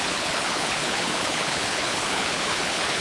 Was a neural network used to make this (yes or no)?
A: yes